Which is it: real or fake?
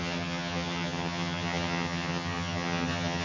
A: fake